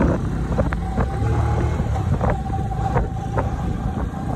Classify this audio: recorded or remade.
recorded